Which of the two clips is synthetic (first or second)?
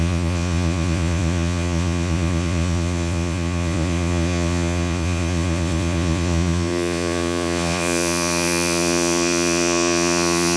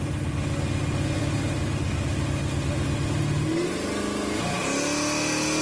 first